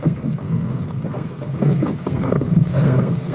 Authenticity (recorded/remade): remade